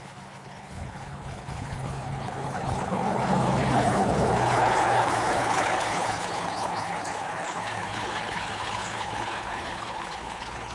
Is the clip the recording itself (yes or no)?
no